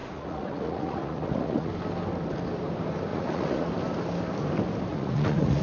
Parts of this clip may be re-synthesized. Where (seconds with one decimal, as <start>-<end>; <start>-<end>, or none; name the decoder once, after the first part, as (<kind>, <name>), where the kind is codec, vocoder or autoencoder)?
0.0-1.7 (vocoder, Vocos); 3.1-3.7; 4.9-5.6